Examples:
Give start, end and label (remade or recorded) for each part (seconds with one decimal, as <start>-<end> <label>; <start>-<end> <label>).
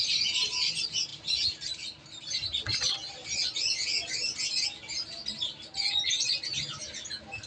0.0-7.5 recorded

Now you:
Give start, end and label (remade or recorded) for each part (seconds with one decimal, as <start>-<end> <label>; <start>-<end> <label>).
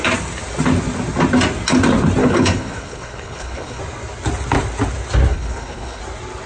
0.0-2.2 recorded; 2.2-3.8 remade; 3.8-5.3 recorded; 5.3-6.0 remade; 6.0-6.5 recorded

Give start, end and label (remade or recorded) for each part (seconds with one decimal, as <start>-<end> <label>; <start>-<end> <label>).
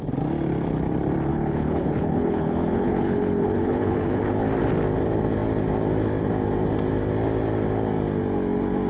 0.0-1.3 recorded; 1.3-4.2 remade; 4.2-8.9 recorded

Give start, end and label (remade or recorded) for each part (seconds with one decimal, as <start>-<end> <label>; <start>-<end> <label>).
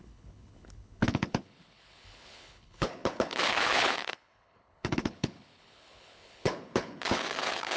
0.0-7.8 remade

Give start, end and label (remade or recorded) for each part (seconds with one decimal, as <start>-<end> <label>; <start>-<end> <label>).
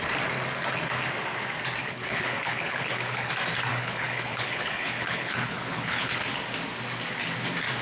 0.0-1.8 recorded; 1.8-3.3 remade; 3.3-3.7 recorded; 3.7-6.2 remade; 6.2-7.8 recorded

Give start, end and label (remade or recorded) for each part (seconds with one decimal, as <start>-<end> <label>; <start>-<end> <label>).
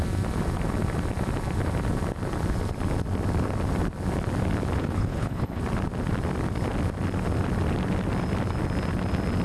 0.0-4.8 recorded; 4.8-5.6 remade; 5.6-9.4 recorded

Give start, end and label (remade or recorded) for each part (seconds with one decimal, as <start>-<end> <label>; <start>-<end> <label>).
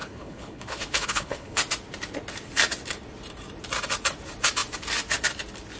0.0-1.6 remade; 1.6-5.8 recorded